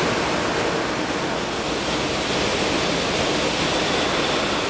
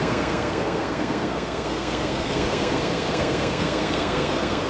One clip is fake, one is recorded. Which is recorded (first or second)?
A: first